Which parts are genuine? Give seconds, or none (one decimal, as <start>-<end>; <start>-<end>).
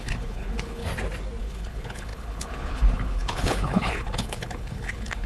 0.8-1.4